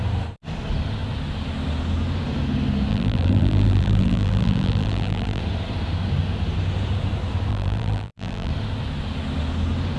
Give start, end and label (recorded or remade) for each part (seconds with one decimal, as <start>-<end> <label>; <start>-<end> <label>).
0.0-2.9 recorded; 2.9-5.4 remade; 5.4-7.5 recorded; 7.5-8.5 remade; 8.5-10.0 recorded